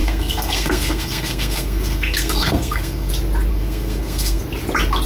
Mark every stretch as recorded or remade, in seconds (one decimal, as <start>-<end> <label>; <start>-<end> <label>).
0.0-3.1 remade; 3.1-3.5 recorded; 3.5-4.4 remade; 4.4-5.1 recorded

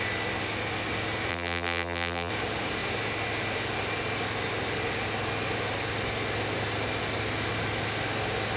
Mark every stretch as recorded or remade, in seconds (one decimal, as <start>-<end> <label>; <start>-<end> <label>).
0.0-1.3 recorded; 1.3-2.3 remade; 2.3-8.6 recorded

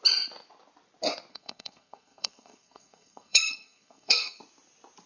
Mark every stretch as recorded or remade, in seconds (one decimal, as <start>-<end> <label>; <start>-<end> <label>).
0.0-1.3 recorded; 1.3-4.4 remade; 4.4-5.1 recorded